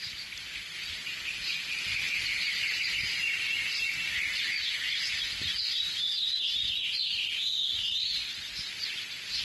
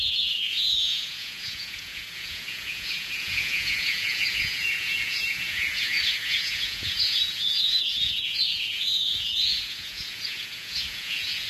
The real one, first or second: first